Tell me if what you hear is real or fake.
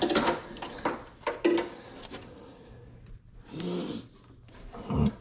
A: real